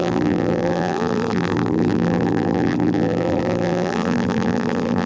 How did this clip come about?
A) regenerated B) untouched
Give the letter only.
A